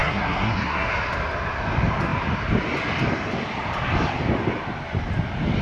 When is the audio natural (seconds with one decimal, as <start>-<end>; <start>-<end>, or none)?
0.9-5.6